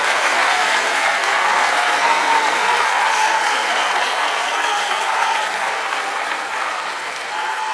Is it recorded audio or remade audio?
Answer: remade